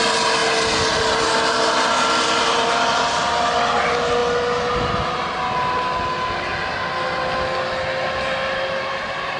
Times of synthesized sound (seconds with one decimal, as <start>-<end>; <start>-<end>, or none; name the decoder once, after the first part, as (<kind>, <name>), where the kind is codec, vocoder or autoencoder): 0.0-0.4 (vocoder, BigVGAN v2); 1.0-4.2; 6.0-6.5; 8.9-9.4